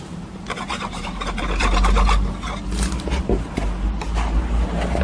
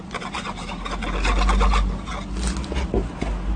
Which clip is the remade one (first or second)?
first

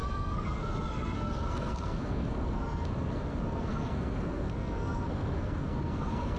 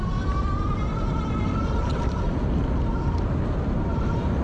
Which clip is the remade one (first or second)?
first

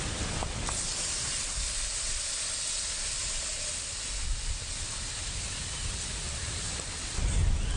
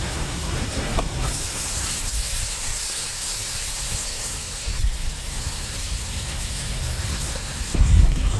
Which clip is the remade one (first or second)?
second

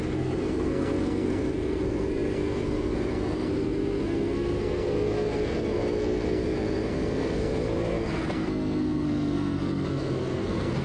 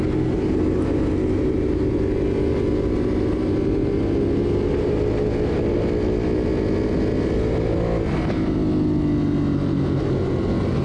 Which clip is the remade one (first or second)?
first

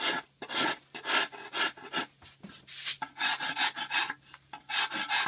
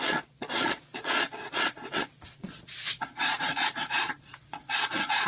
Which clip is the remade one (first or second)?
second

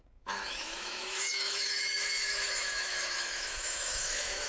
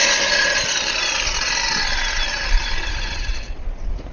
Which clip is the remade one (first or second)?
first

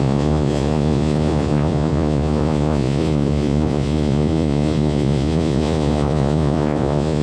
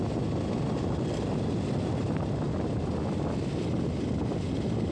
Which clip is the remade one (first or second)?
first